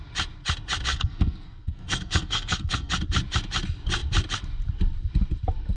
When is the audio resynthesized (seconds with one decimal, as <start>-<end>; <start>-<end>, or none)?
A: 0.9-2.9